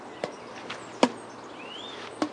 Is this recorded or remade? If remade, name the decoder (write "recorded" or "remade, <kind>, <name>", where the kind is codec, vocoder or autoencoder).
recorded